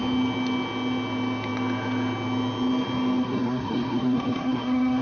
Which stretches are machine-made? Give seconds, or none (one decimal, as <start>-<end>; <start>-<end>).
3.2-5.0